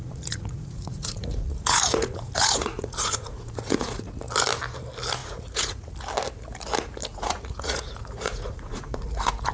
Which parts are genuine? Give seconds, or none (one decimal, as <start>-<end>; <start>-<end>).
4.1-5.2; 5.9-7.1